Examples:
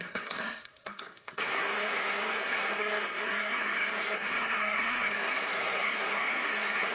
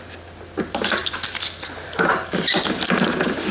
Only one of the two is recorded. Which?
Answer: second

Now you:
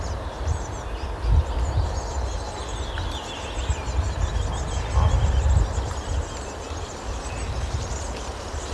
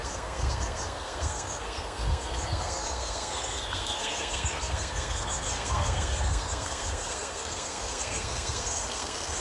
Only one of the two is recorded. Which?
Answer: first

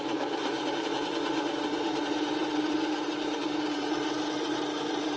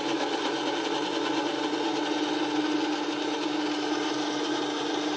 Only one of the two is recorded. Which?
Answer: second